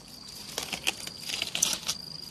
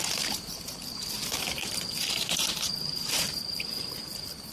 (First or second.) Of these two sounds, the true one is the first